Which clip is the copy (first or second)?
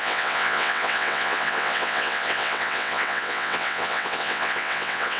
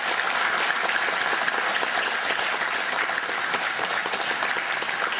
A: first